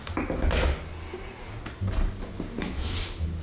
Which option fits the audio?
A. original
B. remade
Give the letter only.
A